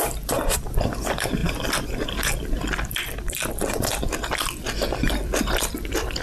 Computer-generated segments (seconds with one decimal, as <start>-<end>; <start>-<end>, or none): 0.0-6.2